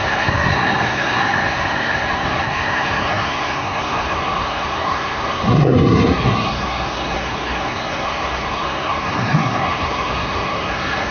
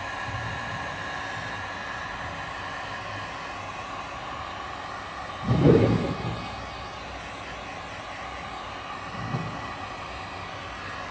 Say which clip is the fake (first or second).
first